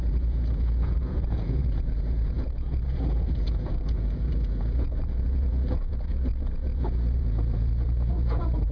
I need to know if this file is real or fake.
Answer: fake